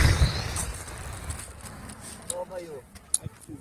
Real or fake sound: real